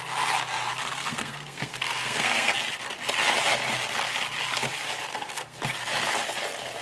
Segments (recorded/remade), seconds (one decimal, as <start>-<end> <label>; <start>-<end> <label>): 0.0-0.8 recorded; 0.8-2.5 remade; 2.5-5.1 recorded; 5.1-5.6 remade; 5.6-6.8 recorded